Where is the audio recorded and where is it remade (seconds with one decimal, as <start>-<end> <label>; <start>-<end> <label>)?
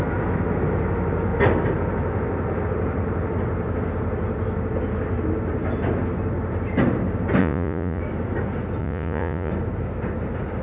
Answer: 0.0-7.4 recorded; 7.4-8.0 remade; 8.0-8.8 recorded; 8.8-9.5 remade; 9.5-10.6 recorded